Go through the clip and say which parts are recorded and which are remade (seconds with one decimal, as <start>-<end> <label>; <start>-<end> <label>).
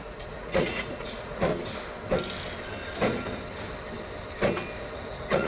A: 0.0-1.5 remade; 1.5-4.8 recorded; 4.8-5.5 remade